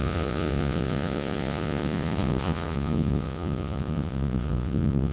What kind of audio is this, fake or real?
fake